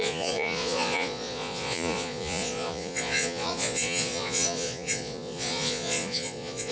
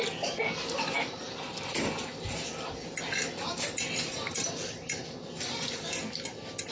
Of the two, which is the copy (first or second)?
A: first